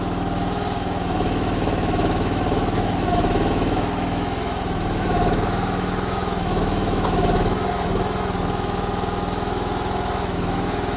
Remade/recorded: remade